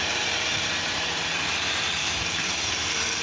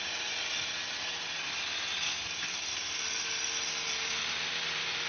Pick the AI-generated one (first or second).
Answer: first